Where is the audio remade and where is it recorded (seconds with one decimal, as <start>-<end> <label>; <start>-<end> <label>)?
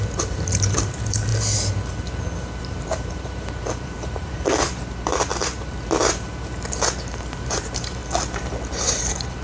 0.0-1.3 remade; 1.3-2.6 recorded; 2.6-8.0 remade; 8.0-8.8 recorded; 8.8-9.4 remade